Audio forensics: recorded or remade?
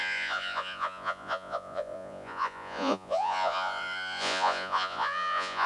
remade